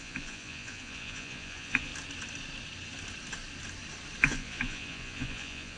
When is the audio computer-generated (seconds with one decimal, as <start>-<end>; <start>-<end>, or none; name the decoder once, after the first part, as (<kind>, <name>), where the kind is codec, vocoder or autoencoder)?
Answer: 0.0-1.9 (vocoder, Vocos); 4.2-5.8